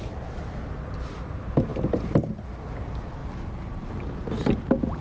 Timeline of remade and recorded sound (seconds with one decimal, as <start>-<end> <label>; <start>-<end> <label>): 0.0-5.0 recorded